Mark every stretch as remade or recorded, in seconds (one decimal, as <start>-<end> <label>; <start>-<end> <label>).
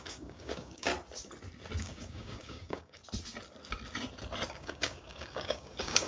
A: 0.0-0.9 remade; 0.9-1.8 recorded; 1.8-3.0 remade; 3.0-4.5 recorded; 4.5-6.1 remade